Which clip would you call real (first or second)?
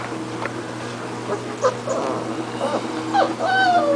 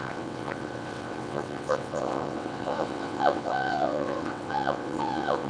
first